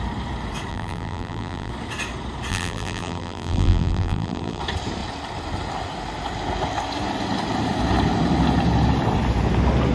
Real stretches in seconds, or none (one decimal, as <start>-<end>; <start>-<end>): 0.0-0.7; 1.7-2.5; 4.6-9.9